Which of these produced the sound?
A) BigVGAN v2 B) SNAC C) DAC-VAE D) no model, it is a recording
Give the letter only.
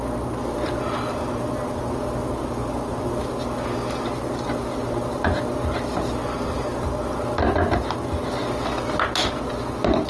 D